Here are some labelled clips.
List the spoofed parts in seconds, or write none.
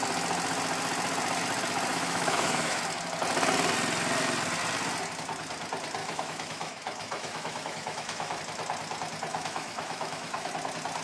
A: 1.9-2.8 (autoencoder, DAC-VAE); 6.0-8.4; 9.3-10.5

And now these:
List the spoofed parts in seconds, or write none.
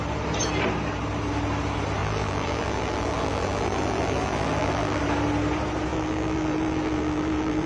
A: 2.0-5.0 (vocoder, BigVGAN v2); 5.9-7.7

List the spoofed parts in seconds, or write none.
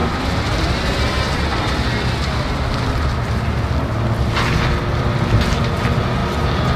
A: 6.2-6.8 (vocoder, BigVGAN v2)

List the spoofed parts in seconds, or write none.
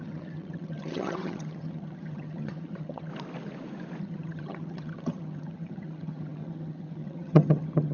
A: 0.0-3.1 (vocoder, HiFi-GAN); 4.0-7.9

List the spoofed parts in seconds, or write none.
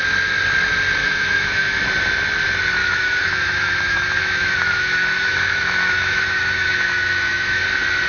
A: 1.0-1.8 (autoencoder, DAC-VAE); 2.8-7.6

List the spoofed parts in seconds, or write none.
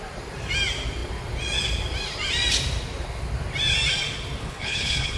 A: 4.4-5.2 (codec, HILCodec)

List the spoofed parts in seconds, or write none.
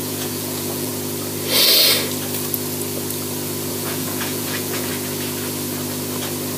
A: 0.0-0.9 (vocoder, Vocos); 3.7-4.9